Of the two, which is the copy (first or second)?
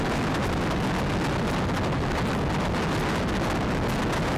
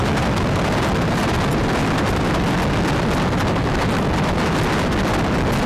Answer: second